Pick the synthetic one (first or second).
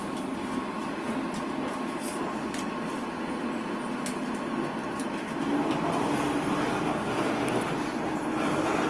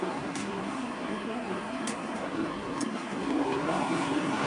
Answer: second